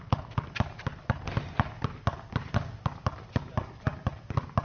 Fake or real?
real